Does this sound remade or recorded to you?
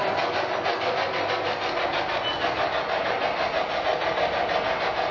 recorded